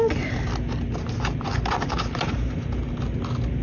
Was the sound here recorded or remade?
recorded